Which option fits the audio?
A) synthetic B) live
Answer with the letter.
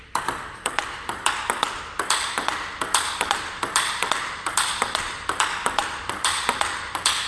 A